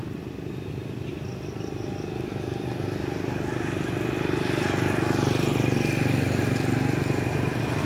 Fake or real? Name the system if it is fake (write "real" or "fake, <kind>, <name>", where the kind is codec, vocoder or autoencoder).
real